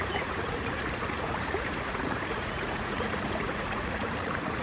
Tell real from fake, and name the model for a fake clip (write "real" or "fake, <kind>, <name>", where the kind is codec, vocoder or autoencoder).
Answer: fake, vocoder, Vocos